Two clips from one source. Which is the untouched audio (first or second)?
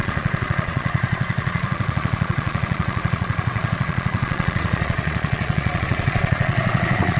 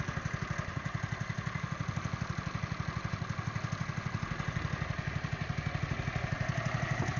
second